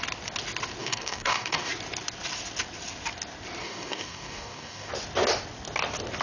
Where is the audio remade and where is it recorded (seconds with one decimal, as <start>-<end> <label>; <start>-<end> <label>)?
0.0-0.8 recorded; 0.8-1.7 remade; 1.7-3.6 recorded; 3.6-4.9 remade; 4.9-6.2 recorded